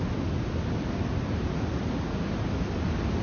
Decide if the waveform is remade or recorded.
recorded